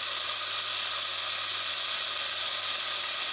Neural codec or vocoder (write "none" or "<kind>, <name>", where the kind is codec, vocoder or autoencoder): none